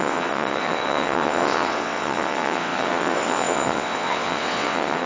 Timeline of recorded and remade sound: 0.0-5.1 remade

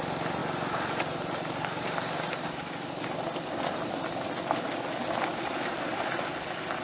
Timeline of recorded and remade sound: 0.0-6.8 recorded

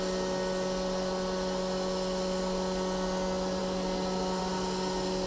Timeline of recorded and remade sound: 0.0-5.3 recorded

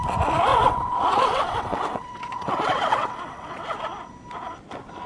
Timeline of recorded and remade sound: 0.0-0.5 recorded; 0.5-3.6 remade; 3.6-5.1 recorded

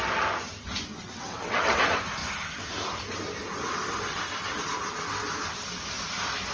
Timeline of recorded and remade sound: 0.0-0.9 recorded; 0.9-1.8 remade; 1.8-6.5 recorded